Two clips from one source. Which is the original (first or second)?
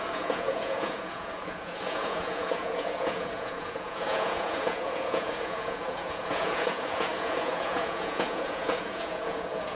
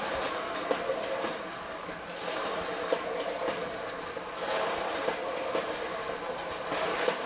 second